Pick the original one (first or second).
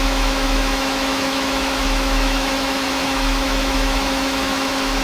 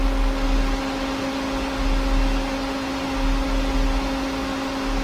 second